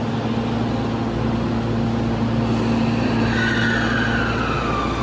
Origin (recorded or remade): recorded